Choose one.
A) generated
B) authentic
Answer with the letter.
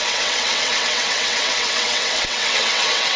A